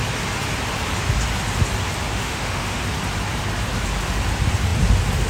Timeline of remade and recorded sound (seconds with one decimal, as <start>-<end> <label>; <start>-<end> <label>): 0.0-2.1 recorded; 2.1-2.8 remade; 2.8-5.3 recorded